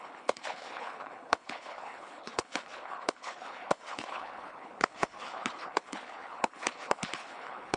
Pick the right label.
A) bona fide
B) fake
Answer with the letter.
B